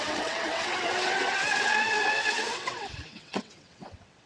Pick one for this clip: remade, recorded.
remade